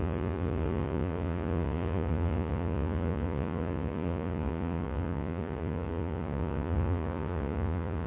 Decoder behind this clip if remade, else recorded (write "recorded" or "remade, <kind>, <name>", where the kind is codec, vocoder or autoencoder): remade, vocoder, Vocos